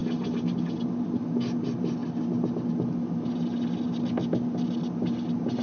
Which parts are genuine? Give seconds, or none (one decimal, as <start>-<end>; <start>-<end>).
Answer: 0.0-5.6